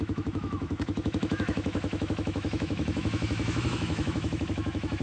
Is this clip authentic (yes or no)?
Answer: no